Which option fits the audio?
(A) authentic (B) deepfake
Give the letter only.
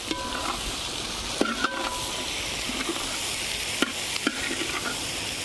A